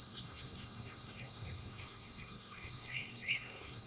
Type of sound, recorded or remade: remade